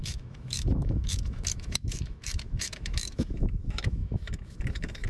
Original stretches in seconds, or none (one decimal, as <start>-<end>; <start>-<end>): none